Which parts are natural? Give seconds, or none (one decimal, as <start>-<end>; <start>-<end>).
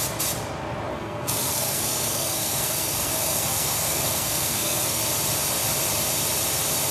0.0-0.9; 5.0-6.9